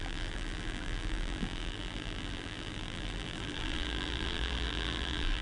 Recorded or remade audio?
remade